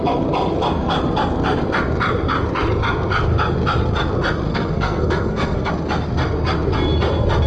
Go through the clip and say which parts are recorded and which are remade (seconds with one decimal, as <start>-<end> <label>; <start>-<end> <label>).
0.0-4.5 recorded; 4.5-5.7 remade; 5.7-7.5 recorded